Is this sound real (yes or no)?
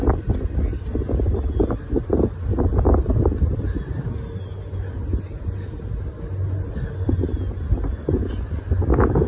yes